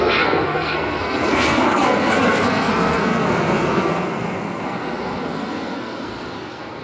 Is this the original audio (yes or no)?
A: no